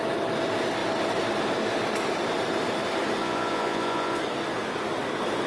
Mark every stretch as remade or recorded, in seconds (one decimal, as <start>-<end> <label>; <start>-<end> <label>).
0.0-3.2 recorded; 3.2-4.2 remade; 4.2-5.5 recorded